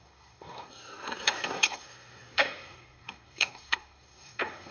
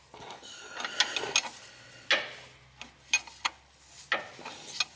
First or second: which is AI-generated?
first